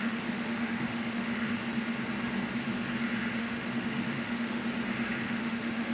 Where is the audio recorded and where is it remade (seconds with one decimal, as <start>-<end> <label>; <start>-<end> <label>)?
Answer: 0.0-1.6 remade; 1.6-3.4 recorded; 3.4-4.6 remade; 4.6-5.2 recorded; 5.2-5.9 remade